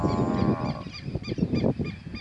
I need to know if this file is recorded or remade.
recorded